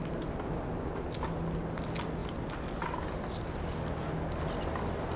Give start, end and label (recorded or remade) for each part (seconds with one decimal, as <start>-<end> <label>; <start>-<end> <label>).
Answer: 0.0-5.2 recorded